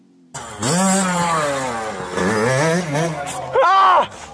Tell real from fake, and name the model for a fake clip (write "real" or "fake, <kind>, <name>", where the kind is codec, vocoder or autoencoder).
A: real